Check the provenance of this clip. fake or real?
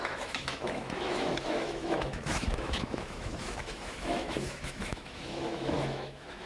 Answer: fake